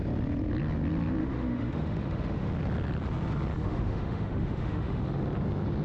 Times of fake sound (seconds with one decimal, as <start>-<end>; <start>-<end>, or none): 1.2-2.5; 3.6-5.0